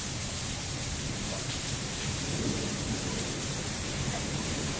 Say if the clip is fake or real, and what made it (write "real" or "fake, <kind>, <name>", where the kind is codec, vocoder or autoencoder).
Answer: fake, vocoder, BigVGAN v2